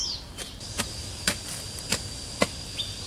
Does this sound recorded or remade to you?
recorded